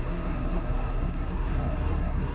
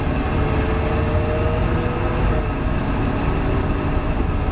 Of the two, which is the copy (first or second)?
first